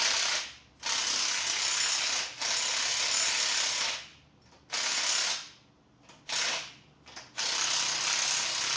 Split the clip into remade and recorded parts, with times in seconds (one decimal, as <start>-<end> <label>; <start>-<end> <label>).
0.0-8.8 recorded